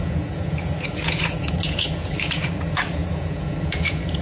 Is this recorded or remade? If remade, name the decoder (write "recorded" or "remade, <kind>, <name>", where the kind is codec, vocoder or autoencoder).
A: remade, vocoder, Vocos